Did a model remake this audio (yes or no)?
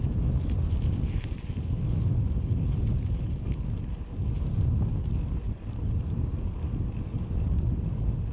no